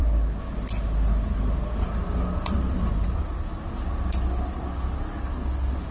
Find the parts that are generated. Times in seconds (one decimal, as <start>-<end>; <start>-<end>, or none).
none